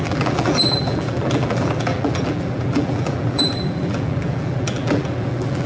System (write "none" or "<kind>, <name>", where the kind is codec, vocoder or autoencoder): vocoder, BigVGAN v2